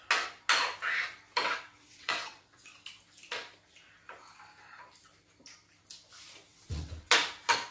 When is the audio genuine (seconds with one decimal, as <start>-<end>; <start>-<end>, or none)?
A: 0.0-1.4; 2.7-6.5; 7.1-7.7